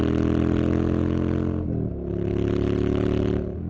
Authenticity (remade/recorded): recorded